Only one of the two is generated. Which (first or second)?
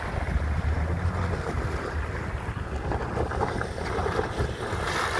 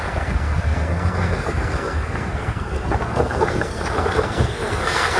second